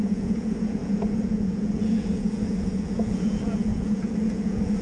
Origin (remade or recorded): remade